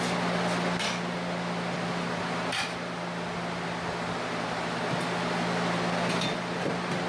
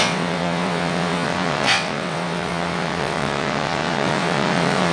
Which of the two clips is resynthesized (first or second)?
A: second